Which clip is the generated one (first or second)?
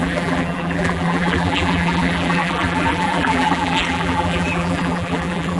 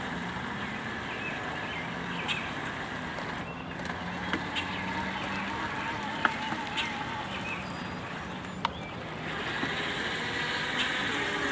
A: first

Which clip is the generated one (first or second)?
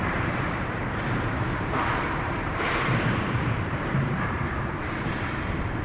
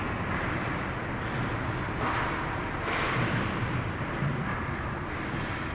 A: first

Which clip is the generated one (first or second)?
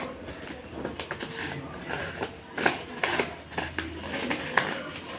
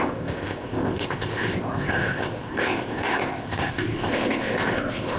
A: second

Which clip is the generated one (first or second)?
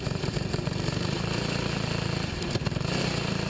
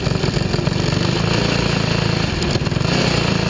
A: first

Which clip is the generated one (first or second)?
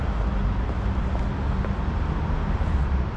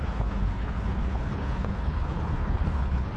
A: second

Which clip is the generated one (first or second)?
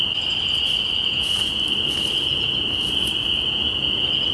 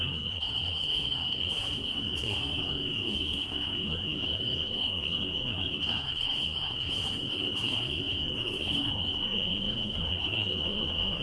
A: second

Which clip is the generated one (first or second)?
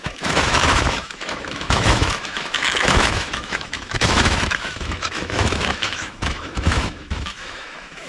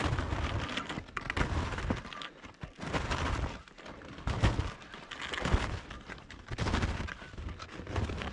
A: first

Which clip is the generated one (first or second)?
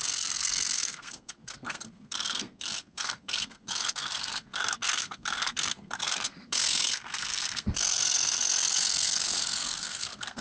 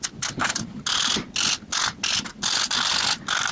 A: first